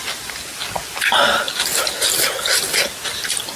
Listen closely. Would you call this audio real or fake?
real